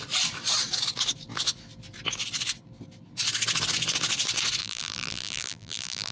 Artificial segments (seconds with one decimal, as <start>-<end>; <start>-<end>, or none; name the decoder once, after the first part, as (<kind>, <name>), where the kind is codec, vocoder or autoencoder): 4.6-6.1 (vocoder, BigVGAN v2)